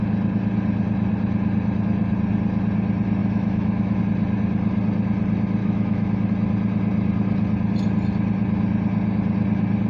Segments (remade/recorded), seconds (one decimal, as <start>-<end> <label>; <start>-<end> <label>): 0.0-3.2 recorded; 3.2-4.0 remade; 4.0-5.6 recorded; 5.6-6.3 remade; 6.3-9.9 recorded